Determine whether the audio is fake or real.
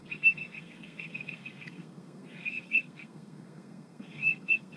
fake